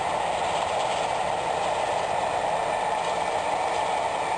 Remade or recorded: recorded